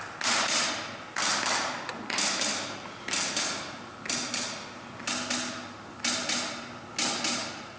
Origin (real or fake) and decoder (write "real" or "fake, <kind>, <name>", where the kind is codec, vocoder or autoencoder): real